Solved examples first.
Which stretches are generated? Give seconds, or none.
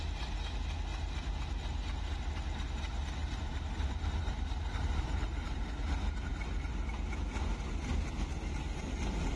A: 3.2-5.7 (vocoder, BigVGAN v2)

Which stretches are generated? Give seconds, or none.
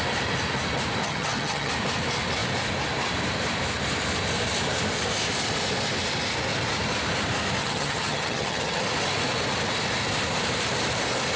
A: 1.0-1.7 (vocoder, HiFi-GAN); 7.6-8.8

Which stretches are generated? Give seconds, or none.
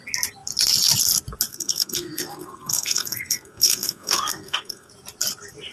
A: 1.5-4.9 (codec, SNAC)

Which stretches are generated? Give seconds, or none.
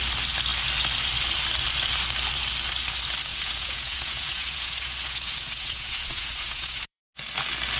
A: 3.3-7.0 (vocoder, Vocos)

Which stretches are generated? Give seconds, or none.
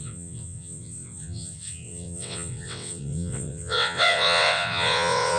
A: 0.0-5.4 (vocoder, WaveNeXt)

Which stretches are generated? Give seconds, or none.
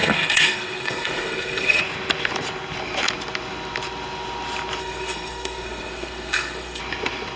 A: 0.0-1.8 (codec, SNAC); 4.8-6.8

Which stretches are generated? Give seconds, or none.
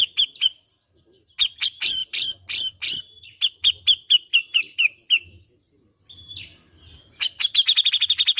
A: none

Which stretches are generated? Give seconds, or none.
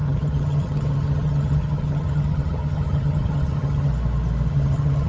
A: 0.0-3.9 (vocoder, HiFi-GAN); 4.5-5.1